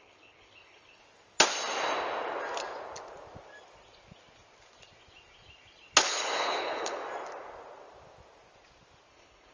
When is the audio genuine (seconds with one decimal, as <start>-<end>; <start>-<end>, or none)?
1.0-6.0; 7.0-9.1